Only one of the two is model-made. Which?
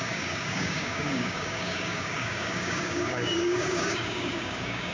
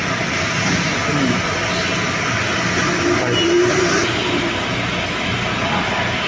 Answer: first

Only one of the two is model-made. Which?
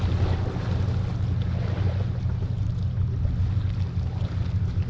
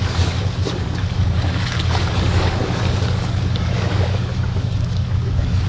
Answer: second